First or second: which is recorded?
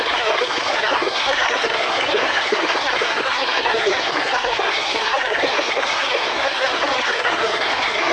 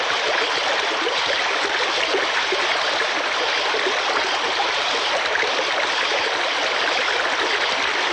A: second